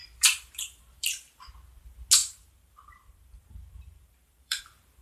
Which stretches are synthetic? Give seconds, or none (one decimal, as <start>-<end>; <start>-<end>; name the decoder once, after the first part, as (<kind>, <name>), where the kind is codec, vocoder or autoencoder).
0.0-1.5 (vocoder, BigVGAN v2); 2.2-4.6